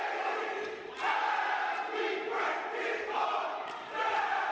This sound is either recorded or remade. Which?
recorded